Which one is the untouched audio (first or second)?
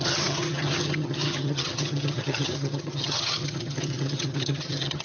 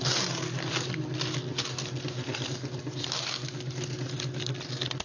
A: second